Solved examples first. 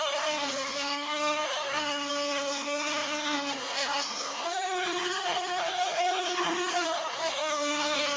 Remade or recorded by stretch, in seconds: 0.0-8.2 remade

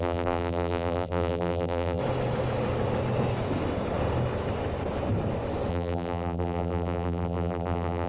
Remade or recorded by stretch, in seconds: 0.0-2.0 remade; 2.0-5.7 recorded; 5.7-8.1 remade

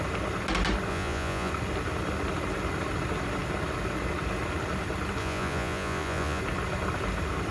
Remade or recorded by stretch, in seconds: 0.0-0.9 recorded; 0.9-1.5 remade; 1.5-5.2 recorded; 5.2-6.4 remade; 6.4-7.5 recorded

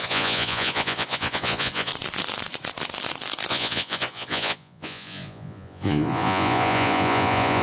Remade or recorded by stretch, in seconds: 0.0-1.9 remade; 1.9-3.5 recorded; 3.5-7.6 remade

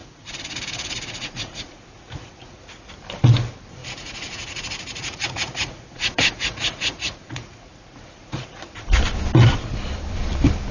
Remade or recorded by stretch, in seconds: 0.0-2.9 remade; 2.9-3.8 recorded; 3.8-9.0 remade; 9.0-10.7 recorded

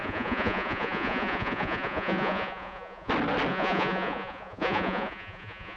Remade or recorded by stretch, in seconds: 0.0-3.1 remade; 3.1-3.5 recorded; 3.5-5.8 remade

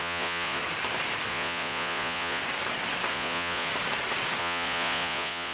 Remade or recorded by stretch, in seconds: 0.0-0.6 remade; 0.6-1.3 recorded; 1.3-2.4 remade; 2.4-3.1 recorded; 3.1-3.7 remade; 3.7-4.4 recorded; 4.4-5.5 remade

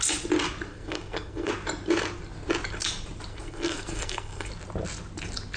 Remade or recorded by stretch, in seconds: 0.0-0.7 recorded; 0.7-1.5 remade; 1.5-3.3 recorded; 3.3-4.5 remade; 4.5-5.6 recorded